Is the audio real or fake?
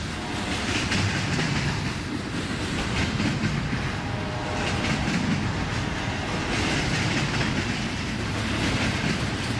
real